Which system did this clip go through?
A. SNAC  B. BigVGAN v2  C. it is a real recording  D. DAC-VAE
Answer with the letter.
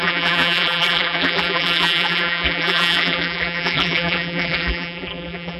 B